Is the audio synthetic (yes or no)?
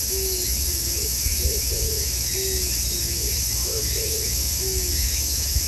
yes